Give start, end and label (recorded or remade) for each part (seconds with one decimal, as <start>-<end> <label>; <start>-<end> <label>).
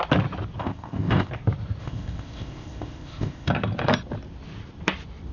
0.0-0.6 recorded; 0.6-1.3 remade; 1.3-1.8 recorded; 1.8-3.5 remade; 3.5-5.3 recorded